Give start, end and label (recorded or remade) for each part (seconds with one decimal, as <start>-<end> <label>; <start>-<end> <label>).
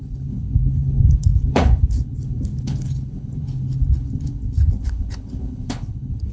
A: 0.0-6.3 remade